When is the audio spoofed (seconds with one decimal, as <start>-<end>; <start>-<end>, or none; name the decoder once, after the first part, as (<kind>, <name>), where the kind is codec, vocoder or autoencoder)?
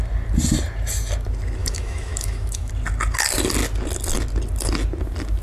1.6-2.7 (autoencoder, DAC-VAE)